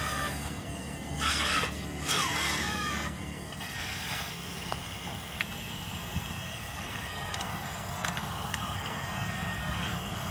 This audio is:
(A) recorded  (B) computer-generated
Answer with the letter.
B